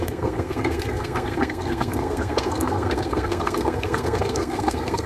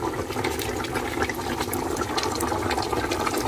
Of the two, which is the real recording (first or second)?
second